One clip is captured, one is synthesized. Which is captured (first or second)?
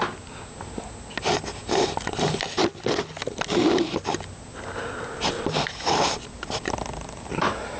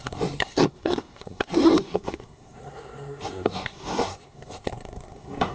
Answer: first